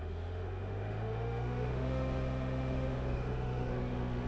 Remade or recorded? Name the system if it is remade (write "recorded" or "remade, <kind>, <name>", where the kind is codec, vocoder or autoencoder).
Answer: remade, autoencoder, DAC-VAE